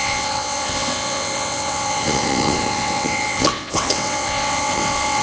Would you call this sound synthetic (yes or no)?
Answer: yes